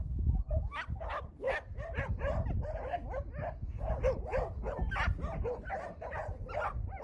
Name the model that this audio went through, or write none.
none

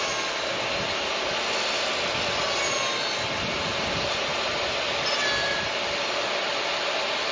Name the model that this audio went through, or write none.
none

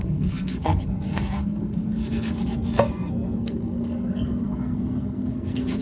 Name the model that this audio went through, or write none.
codec, SNAC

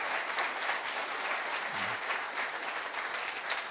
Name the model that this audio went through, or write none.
none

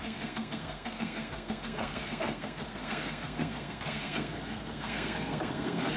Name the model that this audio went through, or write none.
codec, SNAC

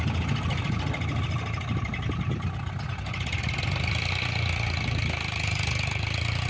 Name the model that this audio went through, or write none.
none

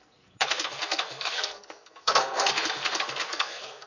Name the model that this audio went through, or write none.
codec, SNAC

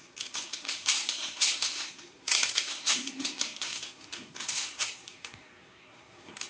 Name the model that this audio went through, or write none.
codec, SNAC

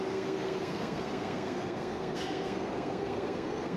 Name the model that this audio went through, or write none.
codec, SNAC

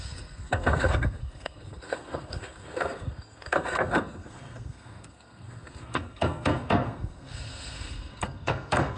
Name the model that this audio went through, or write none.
codec, SNAC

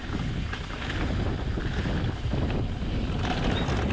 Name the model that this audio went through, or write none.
none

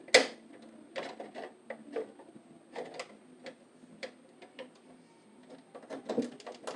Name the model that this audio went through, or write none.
none